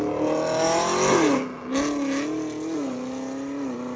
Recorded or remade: recorded